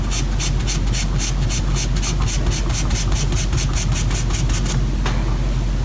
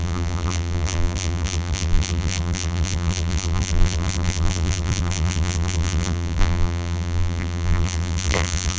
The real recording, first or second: first